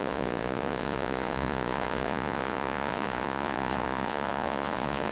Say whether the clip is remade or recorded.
remade